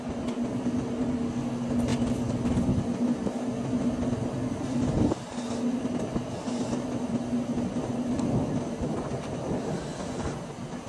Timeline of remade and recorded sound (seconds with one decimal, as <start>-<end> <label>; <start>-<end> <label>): 0.0-10.9 recorded